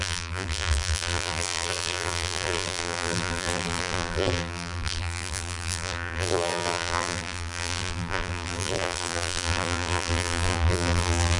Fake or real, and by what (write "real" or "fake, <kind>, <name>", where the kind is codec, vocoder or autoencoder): fake, vocoder, BigVGAN v2